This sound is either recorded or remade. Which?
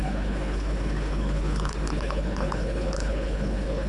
remade